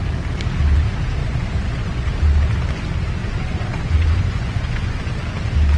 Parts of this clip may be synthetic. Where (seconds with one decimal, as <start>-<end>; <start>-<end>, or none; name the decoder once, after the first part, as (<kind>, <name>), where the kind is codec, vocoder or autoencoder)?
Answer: 1.2-2.1 (vocoder, Vocos); 3.2-5.1